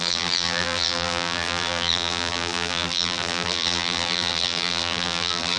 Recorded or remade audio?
remade